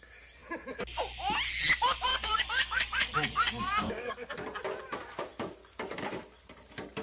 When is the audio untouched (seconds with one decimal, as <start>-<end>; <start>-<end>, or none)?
0.0-2.1; 4.3-7.0